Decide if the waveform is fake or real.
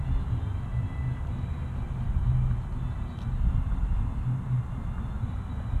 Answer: real